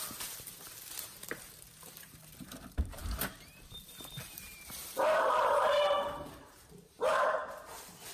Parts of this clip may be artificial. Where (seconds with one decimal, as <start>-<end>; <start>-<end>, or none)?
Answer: 0.0-8.1